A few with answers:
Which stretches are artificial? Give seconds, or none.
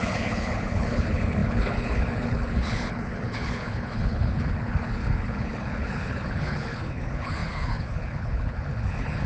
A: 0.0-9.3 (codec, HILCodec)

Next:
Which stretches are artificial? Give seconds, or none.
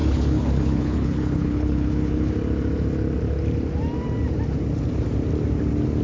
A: 0.0-2.3 (codec, HILCodec)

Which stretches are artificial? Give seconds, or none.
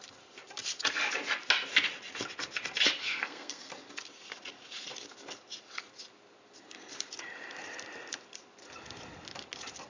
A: 3.0-3.7 (codec, SNAC)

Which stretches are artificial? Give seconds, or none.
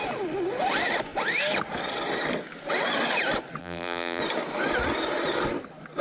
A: 3.6-4.2 (vocoder, BigVGAN v2)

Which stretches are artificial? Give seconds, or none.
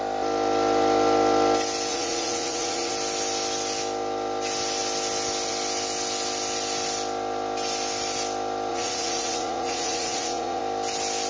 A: 1.9-2.9 (vocoder, Vocos); 8.7-10.6